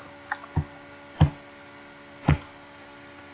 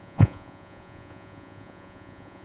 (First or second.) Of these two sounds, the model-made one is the second